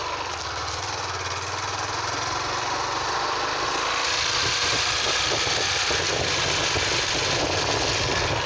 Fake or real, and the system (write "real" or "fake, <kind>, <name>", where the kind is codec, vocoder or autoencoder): real